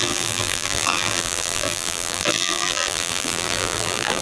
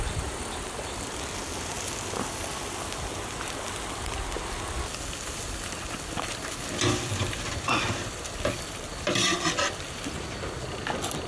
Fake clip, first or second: first